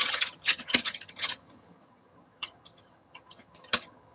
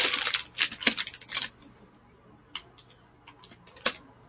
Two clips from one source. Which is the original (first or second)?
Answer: second